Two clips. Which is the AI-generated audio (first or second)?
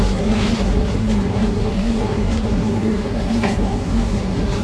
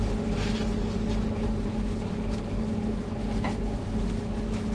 first